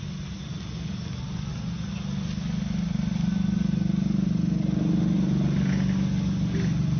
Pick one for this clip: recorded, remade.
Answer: recorded